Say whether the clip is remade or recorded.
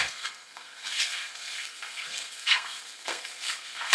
remade